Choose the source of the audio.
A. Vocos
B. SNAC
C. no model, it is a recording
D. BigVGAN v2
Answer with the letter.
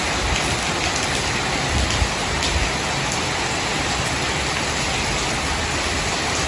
C